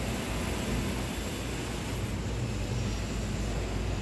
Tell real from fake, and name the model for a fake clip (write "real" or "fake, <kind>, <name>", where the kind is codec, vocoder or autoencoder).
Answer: real